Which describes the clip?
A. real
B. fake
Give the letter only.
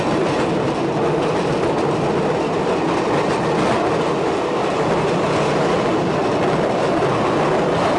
A